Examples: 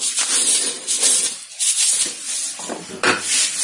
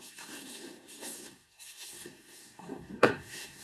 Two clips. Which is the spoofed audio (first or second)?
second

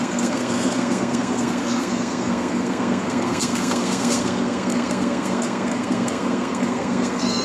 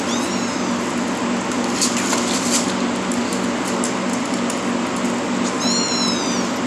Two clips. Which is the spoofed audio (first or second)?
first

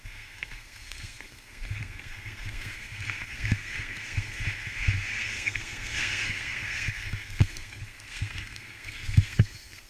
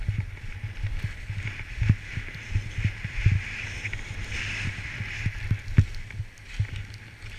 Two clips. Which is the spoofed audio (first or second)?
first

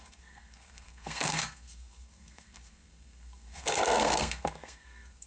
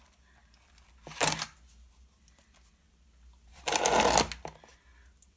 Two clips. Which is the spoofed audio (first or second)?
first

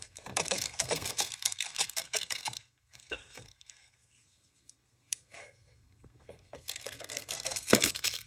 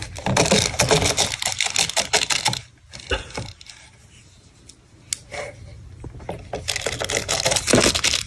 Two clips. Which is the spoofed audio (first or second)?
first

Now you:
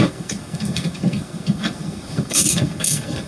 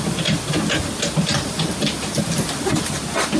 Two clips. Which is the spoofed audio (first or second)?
first